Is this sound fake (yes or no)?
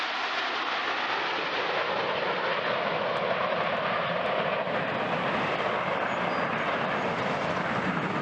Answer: no